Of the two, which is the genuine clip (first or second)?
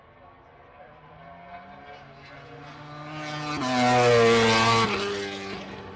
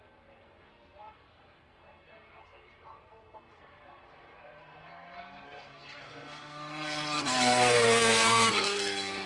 first